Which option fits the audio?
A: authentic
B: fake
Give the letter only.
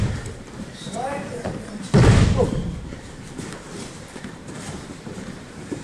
B